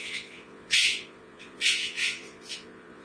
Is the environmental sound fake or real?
fake